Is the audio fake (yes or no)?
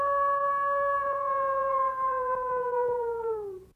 yes